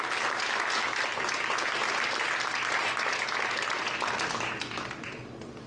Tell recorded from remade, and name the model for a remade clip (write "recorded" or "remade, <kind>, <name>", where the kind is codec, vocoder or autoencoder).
recorded